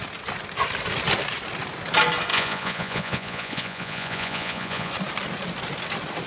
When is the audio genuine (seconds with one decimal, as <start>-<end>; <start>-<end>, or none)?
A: 0.0-2.3; 4.9-6.3